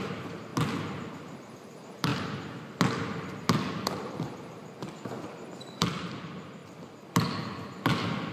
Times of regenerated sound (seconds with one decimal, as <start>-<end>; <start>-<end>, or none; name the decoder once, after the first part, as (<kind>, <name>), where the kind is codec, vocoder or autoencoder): 0.0-0.5 (vocoder, BigVGAN v2); 1.1-2.1; 4.1-4.6; 6.0-6.6